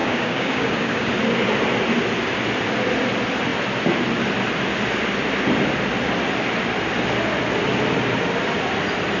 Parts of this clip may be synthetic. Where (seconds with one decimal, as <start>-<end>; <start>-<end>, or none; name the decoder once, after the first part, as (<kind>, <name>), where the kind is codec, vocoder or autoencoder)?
0.0-1.1 (codec, DAC)